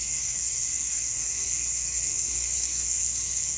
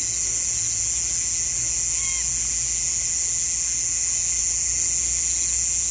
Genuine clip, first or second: second